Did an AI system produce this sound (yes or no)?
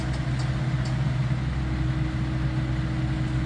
no